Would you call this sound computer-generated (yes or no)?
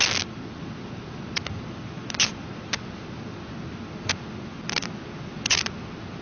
no